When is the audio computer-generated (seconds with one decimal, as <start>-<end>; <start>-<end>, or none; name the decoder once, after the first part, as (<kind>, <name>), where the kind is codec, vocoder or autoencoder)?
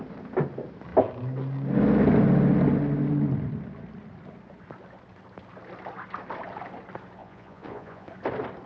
7.2-8.1 (vocoder, Vocos)